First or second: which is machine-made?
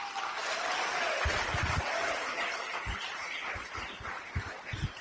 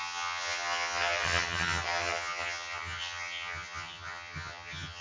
second